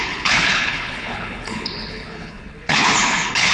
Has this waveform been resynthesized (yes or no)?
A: yes